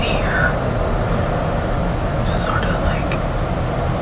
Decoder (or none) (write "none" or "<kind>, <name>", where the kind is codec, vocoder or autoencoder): none